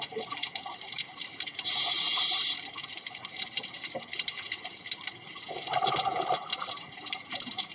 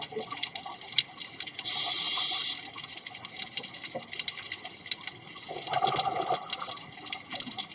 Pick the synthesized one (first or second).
first